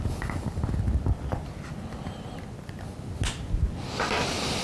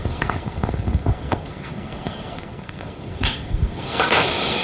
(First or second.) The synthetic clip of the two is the second